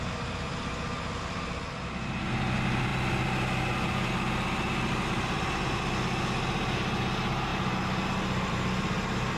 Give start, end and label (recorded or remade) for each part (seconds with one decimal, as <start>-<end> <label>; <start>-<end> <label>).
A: 0.0-9.4 recorded